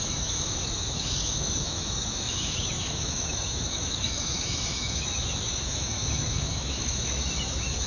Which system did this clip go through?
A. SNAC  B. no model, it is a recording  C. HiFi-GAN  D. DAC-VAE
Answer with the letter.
D